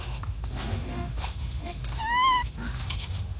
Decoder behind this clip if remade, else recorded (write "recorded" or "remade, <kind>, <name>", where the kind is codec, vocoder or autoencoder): remade, autoencoder, DAC-VAE